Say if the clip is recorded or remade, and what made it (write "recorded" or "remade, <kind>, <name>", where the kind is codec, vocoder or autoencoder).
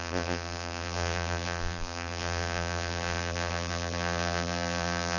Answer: remade, vocoder, BigVGAN v2